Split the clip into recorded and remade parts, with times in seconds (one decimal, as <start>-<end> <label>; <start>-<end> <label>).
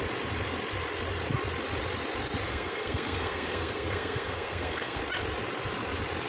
0.0-2.5 recorded; 2.5-5.0 remade; 5.0-6.3 recorded